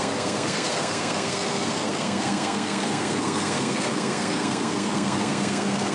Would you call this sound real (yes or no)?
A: no